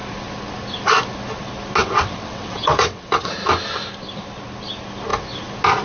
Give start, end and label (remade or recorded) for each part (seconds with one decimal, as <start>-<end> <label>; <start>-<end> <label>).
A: 0.0-1.8 recorded; 1.8-3.3 remade; 3.3-5.8 recorded